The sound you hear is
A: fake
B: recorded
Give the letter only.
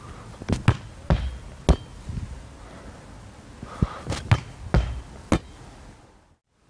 B